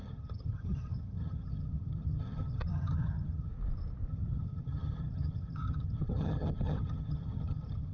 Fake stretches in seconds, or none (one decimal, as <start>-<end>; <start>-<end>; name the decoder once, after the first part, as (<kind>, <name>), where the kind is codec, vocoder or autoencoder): 0.0-3.5 (vocoder, HiFi-GAN); 4.1-7.9